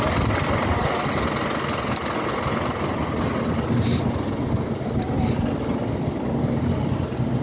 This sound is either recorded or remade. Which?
recorded